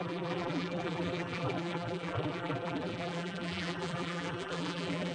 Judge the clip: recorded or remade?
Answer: remade